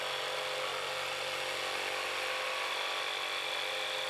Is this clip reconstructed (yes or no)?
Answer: no